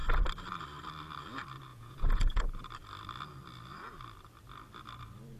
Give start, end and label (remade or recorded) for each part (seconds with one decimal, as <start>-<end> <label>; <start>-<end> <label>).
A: 0.0-1.7 recorded; 1.7-2.4 remade; 2.4-5.4 recorded